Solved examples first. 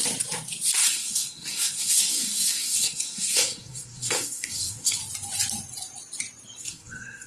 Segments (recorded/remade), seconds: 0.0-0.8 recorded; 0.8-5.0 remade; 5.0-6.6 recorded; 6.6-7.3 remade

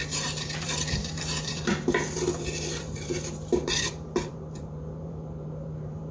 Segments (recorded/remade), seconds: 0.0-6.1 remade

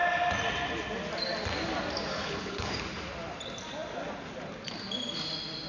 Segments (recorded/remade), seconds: 0.0-2.1 recorded; 2.1-2.7 remade; 2.7-5.7 recorded

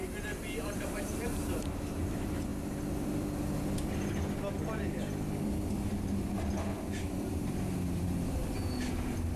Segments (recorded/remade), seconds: 0.0-2.5 remade; 2.5-7.1 recorded; 7.1-8.4 remade; 8.4-9.4 recorded